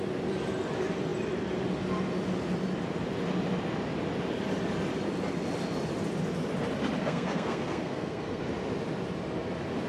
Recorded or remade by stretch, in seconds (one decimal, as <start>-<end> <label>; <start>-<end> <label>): 0.0-7.0 recorded; 7.0-8.4 remade; 8.4-9.9 recorded